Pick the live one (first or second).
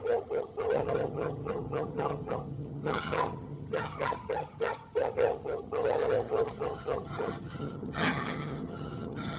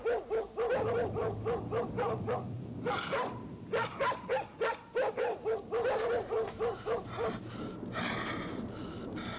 second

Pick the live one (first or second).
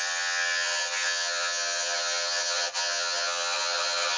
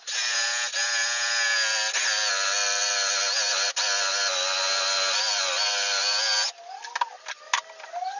second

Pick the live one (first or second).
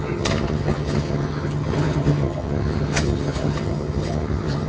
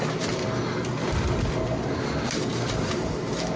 second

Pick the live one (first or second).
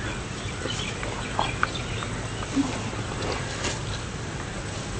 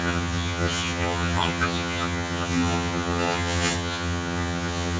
first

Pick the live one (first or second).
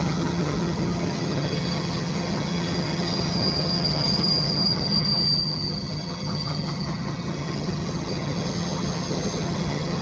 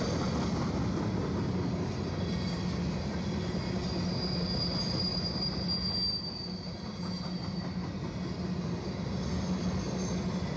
second